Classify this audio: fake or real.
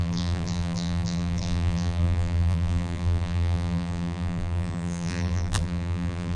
fake